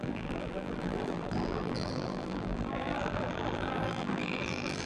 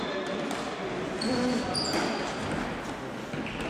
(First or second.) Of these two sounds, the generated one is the first